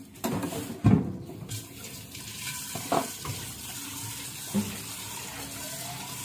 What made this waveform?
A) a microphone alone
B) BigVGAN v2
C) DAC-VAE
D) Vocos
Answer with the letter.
A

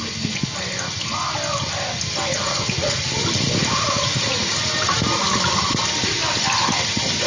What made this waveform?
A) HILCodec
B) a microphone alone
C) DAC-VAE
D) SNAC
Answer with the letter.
B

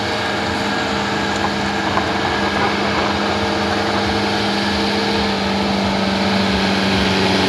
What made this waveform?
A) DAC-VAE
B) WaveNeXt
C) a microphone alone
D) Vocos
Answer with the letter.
C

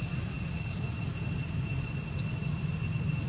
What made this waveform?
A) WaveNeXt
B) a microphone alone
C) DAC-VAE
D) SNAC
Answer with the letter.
B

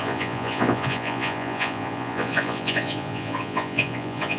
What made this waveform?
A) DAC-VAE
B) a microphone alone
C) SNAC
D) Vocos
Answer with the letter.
D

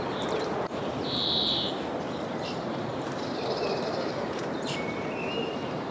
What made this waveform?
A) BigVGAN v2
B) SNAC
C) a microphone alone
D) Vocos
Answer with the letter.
A